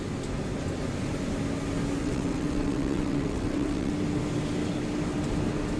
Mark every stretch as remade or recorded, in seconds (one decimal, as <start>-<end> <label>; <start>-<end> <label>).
0.0-2.0 recorded; 2.0-3.9 remade; 3.9-5.8 recorded